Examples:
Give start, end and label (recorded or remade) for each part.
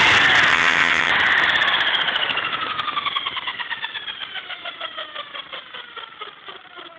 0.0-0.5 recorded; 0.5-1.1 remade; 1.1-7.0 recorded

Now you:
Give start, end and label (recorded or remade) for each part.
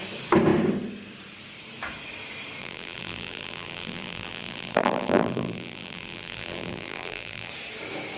0.0-2.6 recorded; 2.6-7.5 remade; 7.5-8.2 recorded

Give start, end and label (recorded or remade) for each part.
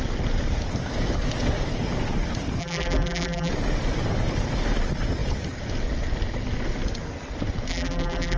0.0-2.6 recorded; 2.6-3.5 remade; 3.5-7.7 recorded; 7.7-8.4 remade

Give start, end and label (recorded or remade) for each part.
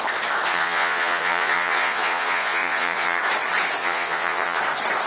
0.0-0.5 recorded; 0.5-3.2 remade; 3.2-3.8 recorded; 3.8-4.6 remade; 4.6-5.1 recorded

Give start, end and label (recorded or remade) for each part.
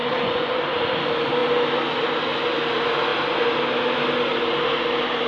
0.0-0.6 remade; 0.6-5.3 recorded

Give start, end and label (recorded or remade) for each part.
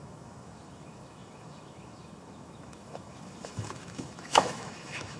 0.0-5.2 remade